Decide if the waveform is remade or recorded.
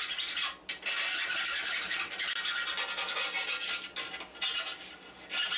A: recorded